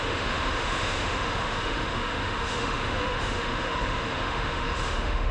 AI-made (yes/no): yes